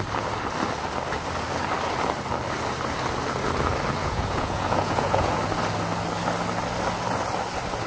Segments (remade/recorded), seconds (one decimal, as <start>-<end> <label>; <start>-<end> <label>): 0.0-4.0 recorded; 4.0-5.4 remade; 5.4-7.9 recorded